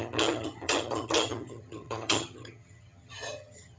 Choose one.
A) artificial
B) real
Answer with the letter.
A